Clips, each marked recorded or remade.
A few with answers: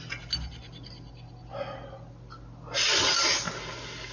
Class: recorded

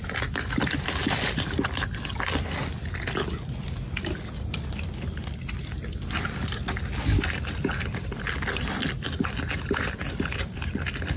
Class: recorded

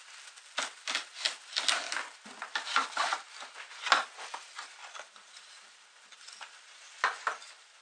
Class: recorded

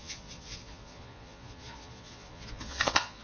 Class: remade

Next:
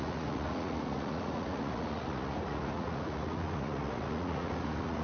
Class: remade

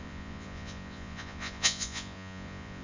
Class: remade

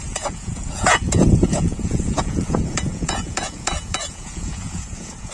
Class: remade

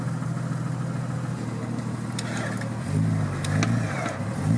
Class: recorded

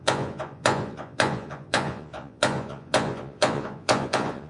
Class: remade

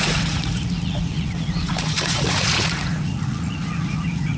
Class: remade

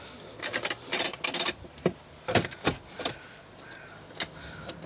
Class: recorded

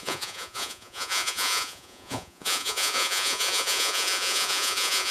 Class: remade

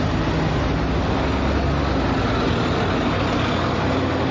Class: recorded